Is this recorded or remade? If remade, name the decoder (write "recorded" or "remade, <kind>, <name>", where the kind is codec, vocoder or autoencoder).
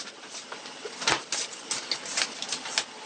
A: recorded